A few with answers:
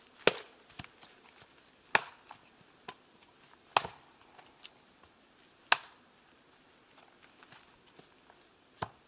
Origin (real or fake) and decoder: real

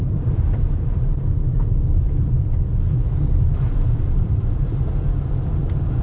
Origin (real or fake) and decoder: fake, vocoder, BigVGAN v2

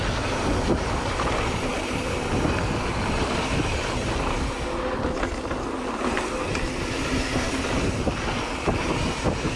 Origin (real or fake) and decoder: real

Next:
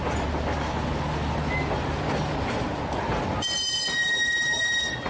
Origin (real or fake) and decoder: real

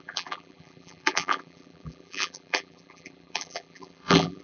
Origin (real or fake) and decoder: fake, vocoder, BigVGAN v2